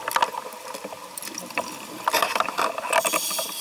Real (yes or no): yes